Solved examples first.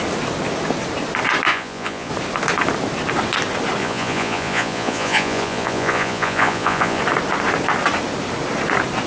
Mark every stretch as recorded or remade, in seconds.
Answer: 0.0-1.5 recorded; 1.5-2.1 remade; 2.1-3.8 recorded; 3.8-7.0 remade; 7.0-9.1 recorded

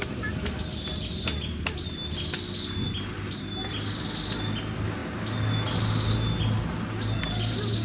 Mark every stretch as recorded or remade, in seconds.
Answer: 0.0-7.8 recorded

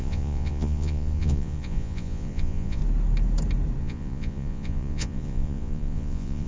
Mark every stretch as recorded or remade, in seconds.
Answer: 0.0-2.8 remade; 2.8-3.8 recorded; 3.8-6.5 remade

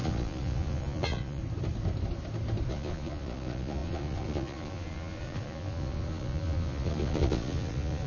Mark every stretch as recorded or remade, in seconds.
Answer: 0.0-1.4 remade; 1.4-2.7 recorded; 2.7-8.1 remade

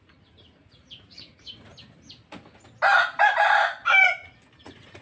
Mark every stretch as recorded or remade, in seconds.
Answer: 0.0-1.7 remade; 1.7-4.6 recorded; 4.6-5.0 remade